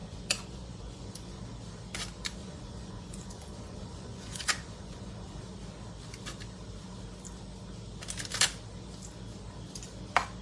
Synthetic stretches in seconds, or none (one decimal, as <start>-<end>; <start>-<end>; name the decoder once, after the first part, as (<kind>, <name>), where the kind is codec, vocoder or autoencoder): 0.0-1.4 (vocoder, Vocos); 2.4-5.4